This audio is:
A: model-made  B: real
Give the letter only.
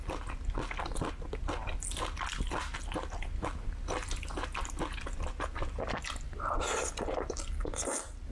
B